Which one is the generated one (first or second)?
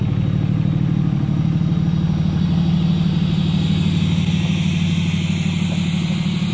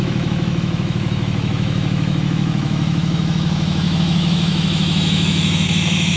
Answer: second